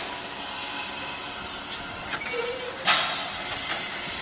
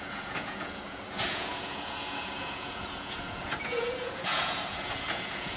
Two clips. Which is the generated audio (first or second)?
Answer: second